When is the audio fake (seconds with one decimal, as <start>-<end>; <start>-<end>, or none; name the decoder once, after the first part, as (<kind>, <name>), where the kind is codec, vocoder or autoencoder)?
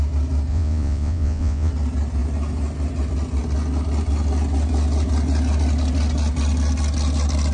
0.5-1.7 (vocoder, Vocos)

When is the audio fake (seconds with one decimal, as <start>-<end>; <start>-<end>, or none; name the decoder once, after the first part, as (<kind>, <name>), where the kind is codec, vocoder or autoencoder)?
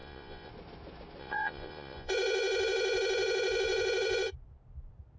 0.0-0.5 (vocoder, Vocos); 1.2-4.3